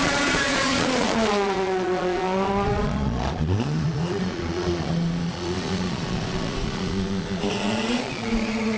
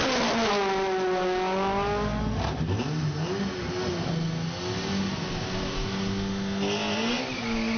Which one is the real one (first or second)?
second